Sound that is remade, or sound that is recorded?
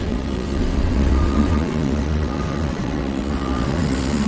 remade